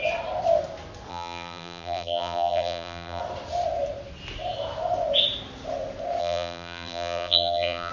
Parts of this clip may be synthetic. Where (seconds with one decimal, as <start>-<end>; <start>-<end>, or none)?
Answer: 1.1-3.2; 6.2-7.9